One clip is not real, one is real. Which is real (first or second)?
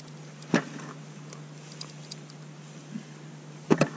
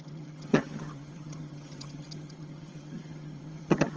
first